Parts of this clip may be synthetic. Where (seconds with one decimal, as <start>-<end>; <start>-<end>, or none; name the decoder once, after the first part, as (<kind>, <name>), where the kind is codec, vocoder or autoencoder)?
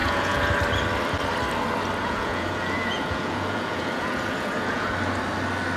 0.0-0.5 (vocoder, Vocos); 2.0-4.9